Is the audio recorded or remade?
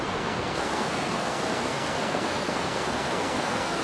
remade